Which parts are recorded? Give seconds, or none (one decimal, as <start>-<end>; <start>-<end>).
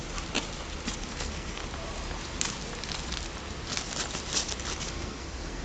0.0-1.1; 1.6-4.8